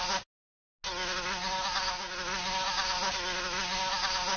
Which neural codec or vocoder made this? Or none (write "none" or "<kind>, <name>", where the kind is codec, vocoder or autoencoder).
none